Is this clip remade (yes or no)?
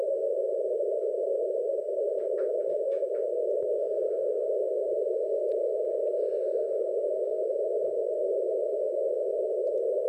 no